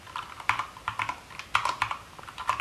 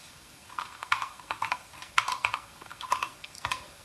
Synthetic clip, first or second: second